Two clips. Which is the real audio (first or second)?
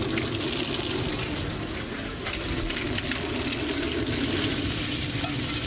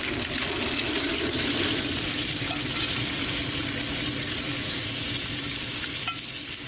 first